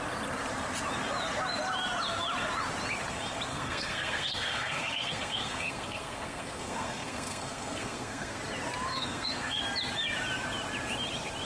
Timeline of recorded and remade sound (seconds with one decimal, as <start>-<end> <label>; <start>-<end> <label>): 0.0-3.5 recorded; 3.5-8.4 remade; 8.4-8.9 recorded; 8.9-9.6 remade; 9.6-11.4 recorded